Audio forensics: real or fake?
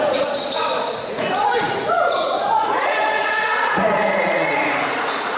fake